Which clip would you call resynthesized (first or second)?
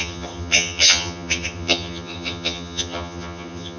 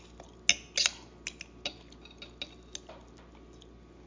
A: first